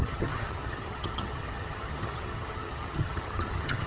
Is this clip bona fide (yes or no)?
no